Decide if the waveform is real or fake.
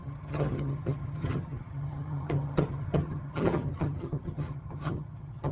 fake